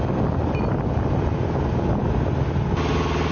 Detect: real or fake real